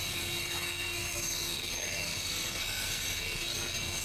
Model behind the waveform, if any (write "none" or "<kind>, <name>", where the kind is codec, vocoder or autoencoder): codec, SNAC